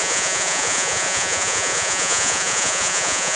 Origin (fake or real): fake